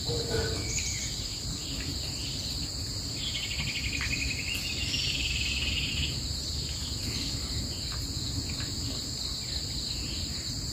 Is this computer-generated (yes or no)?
no